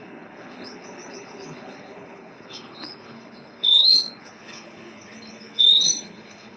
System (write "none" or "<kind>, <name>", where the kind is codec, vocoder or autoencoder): codec, HILCodec